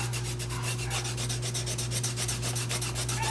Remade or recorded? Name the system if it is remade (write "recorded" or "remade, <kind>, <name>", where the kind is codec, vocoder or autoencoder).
recorded